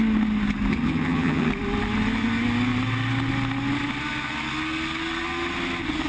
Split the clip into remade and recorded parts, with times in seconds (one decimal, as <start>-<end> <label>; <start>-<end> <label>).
0.0-0.7 recorded; 0.7-1.5 remade; 1.5-6.1 recorded